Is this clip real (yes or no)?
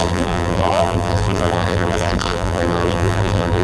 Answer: no